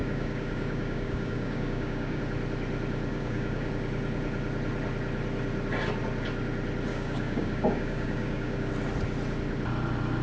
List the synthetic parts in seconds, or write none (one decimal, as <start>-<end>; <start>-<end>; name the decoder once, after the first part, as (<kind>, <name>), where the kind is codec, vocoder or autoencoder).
0.0-2.2 (codec, DAC); 3.1-3.7; 6.9-8.7